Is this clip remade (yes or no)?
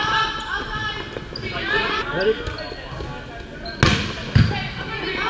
no